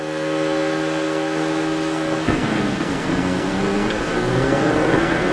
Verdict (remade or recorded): remade